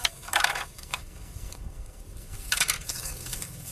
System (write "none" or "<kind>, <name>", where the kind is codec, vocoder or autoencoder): codec, SNAC